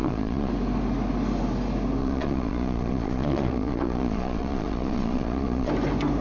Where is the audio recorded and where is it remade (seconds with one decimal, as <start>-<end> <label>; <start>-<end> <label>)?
0.0-0.5 remade; 0.5-2.0 recorded; 2.0-5.7 remade; 5.7-6.2 recorded